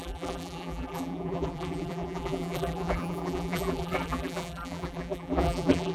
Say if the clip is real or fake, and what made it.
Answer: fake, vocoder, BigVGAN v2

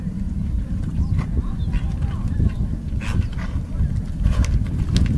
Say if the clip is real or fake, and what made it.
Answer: real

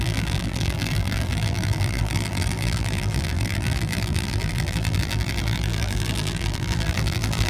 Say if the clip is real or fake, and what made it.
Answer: fake, vocoder, BigVGAN v2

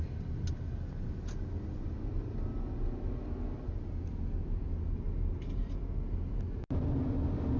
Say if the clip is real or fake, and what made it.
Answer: real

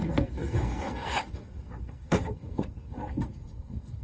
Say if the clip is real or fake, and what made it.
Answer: fake, codec, SNAC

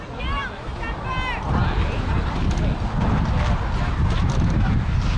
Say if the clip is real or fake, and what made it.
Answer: real